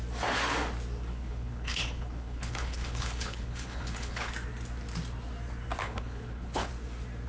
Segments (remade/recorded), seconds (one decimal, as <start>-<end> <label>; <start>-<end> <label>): 0.0-1.1 recorded; 1.1-4.3 remade; 4.3-5.8 recorded; 5.8-6.7 remade; 6.7-7.3 recorded